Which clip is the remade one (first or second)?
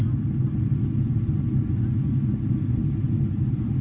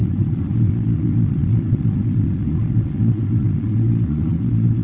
second